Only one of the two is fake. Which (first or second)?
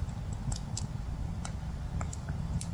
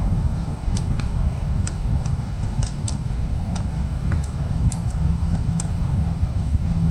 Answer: second